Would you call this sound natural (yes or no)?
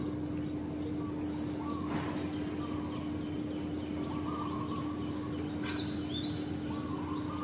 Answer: yes